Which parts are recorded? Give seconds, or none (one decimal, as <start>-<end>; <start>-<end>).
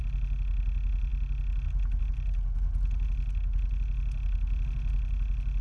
0.0-5.6